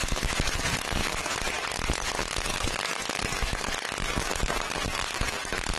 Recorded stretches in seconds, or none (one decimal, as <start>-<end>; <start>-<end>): none